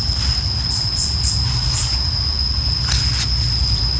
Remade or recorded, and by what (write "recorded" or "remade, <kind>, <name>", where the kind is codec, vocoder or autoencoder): recorded